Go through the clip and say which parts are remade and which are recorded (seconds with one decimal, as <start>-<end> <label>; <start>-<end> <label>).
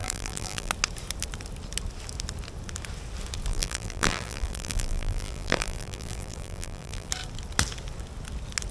0.0-0.7 remade; 0.7-3.5 recorded; 3.5-7.1 remade; 7.1-8.7 recorded